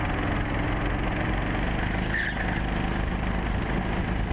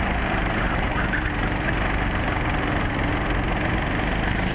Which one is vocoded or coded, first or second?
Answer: second